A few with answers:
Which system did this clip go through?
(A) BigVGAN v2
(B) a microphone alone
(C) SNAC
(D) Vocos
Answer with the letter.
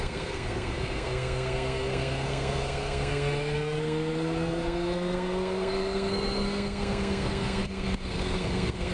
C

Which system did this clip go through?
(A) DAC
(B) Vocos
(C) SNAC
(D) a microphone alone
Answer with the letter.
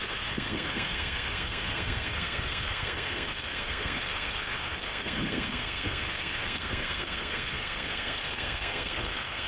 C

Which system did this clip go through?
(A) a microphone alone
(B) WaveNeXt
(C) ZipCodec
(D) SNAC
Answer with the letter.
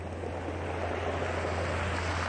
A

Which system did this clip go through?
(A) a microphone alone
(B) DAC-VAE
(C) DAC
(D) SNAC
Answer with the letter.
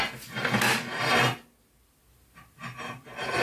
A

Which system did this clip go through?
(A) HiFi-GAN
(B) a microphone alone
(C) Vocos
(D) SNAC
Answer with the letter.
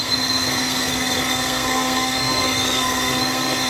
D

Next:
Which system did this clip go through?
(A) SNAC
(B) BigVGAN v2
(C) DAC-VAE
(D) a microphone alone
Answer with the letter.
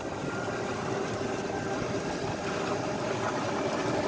D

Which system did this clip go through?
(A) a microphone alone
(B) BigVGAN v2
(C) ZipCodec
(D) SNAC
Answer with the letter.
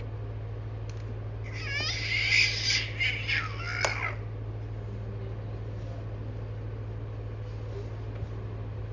A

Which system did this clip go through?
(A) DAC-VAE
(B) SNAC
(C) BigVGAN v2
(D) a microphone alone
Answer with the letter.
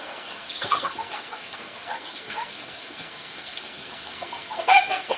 B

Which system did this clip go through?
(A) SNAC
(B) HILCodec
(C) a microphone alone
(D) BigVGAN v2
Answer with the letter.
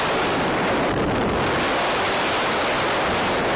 C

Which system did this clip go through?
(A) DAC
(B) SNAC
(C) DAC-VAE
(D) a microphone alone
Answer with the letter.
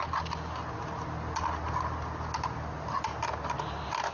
D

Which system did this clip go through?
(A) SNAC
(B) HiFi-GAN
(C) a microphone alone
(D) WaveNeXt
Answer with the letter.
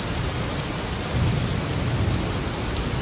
C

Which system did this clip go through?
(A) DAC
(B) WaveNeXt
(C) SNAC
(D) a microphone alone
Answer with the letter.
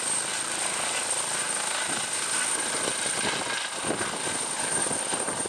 D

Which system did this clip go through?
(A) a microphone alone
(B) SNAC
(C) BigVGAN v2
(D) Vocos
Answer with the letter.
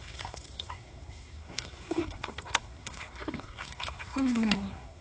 B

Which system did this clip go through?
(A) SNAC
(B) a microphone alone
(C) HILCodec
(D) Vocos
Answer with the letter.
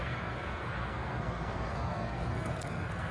A